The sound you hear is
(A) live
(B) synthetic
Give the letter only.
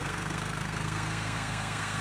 B